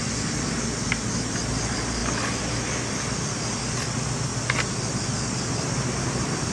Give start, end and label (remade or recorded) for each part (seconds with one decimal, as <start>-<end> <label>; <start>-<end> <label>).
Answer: 0.0-6.5 recorded